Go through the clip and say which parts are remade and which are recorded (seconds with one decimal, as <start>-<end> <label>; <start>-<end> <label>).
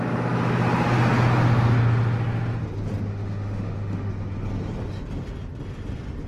0.0-3.1 recorded; 3.1-4.1 remade; 4.1-6.3 recorded